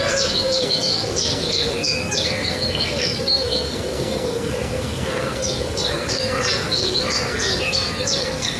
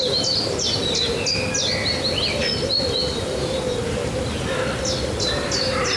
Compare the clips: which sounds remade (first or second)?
first